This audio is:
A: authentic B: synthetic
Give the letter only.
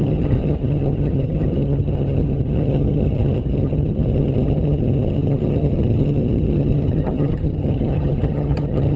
B